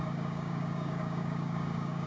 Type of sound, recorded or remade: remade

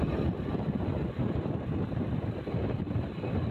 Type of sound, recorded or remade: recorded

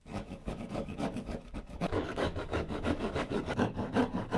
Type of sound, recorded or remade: remade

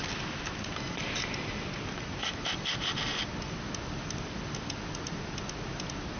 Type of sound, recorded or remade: recorded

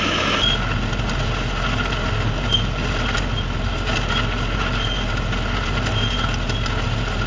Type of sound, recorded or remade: recorded